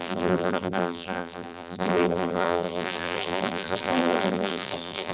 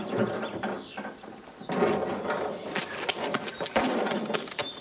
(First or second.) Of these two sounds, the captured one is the second